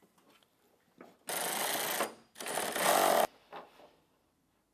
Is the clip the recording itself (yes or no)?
yes